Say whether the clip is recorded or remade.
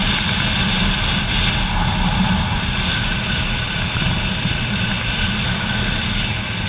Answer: recorded